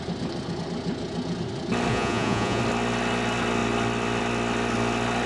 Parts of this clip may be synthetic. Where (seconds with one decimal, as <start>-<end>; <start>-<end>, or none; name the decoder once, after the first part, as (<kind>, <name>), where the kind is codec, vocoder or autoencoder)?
1.9-2.6 (vocoder, Vocos)